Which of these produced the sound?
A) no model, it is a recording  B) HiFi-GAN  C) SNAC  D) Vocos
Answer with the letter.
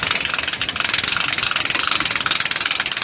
A